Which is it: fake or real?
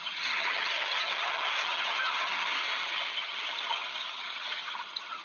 fake